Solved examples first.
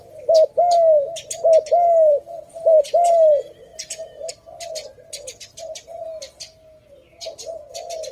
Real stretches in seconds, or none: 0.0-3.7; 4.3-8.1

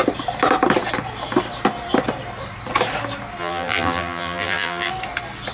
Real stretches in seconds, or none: 0.0-3.4; 4.9-5.5

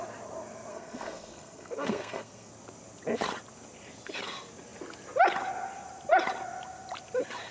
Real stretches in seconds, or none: 0.0-0.7; 2.5-7.5

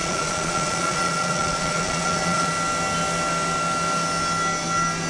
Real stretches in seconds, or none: 2.5-5.1

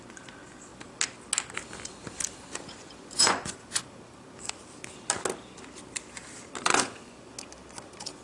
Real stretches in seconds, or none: 0.0-2.5; 3.8-6.7; 7.3-8.2

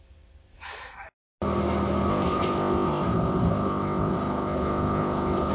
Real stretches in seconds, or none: 0.0-2.1